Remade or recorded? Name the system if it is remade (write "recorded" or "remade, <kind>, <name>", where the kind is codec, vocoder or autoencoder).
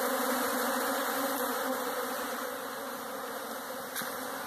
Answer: recorded